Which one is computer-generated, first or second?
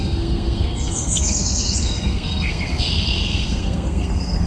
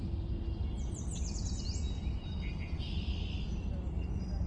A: first